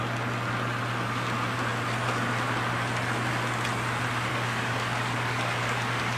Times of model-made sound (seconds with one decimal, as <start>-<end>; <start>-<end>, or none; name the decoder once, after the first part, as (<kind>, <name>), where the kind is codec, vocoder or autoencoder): 4.3-6.2 (codec, DAC)

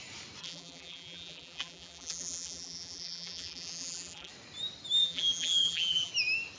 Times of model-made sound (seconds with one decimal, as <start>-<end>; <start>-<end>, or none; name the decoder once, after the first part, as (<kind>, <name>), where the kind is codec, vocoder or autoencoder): 0.4-4.3 (vocoder, BigVGAN v2); 5.0-6.1

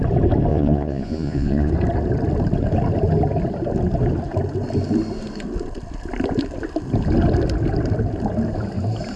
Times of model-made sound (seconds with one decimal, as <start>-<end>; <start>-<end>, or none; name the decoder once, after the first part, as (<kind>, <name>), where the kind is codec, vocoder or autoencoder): 0.5-1.7 (vocoder, Vocos)